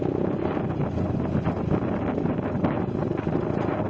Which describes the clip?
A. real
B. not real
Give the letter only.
A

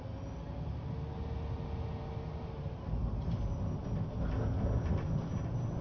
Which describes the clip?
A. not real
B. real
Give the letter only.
B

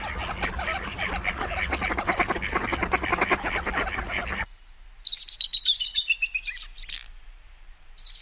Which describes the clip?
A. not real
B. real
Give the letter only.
B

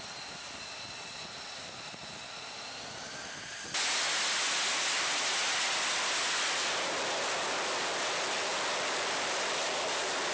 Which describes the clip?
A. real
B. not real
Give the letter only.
A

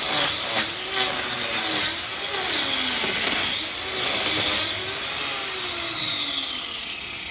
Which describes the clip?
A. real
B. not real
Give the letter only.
A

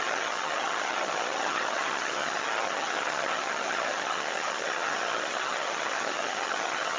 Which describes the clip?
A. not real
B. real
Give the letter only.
A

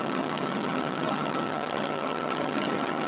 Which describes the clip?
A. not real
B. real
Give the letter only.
A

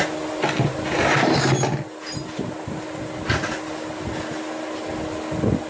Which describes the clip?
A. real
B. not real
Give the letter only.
A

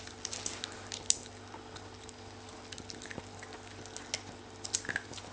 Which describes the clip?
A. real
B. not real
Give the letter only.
A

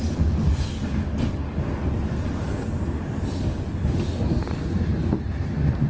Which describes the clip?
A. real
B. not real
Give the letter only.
A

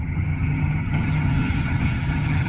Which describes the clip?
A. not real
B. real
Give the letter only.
A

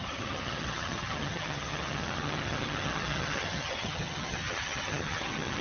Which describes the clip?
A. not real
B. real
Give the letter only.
A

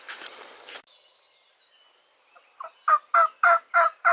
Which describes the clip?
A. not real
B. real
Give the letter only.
B